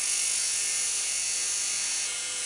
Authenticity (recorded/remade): remade